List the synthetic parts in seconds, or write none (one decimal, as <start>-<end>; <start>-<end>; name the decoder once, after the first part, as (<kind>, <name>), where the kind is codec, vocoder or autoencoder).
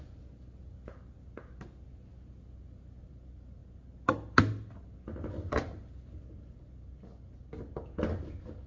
none